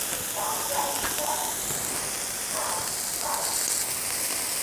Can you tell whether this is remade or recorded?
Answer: recorded